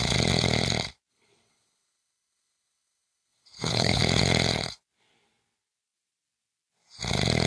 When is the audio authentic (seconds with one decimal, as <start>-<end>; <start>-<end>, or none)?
0.0-1.1; 4.0-7.5